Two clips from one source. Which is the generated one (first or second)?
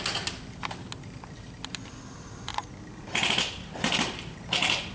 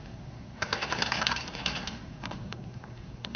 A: second